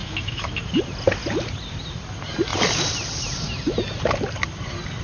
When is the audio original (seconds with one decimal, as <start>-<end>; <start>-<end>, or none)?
0.7-5.0